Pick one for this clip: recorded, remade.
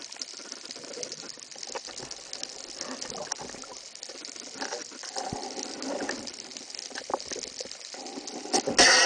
recorded